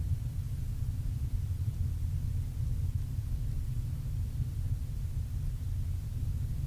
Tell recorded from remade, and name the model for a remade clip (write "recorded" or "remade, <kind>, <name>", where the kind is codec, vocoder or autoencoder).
recorded